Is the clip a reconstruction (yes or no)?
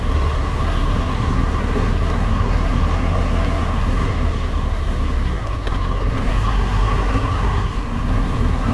yes